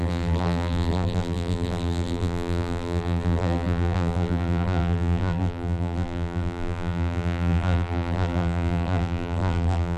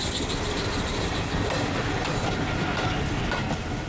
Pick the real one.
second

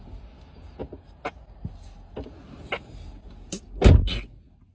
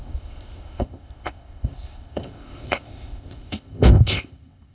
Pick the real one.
first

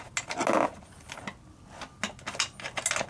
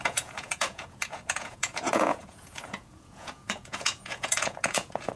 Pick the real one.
first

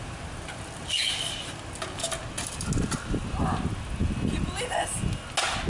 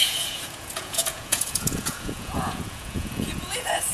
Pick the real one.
first